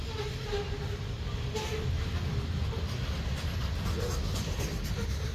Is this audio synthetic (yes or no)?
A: no